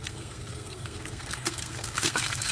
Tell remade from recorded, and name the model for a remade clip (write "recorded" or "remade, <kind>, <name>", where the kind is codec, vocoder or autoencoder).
remade, codec, SNAC